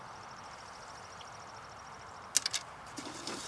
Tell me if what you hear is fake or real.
real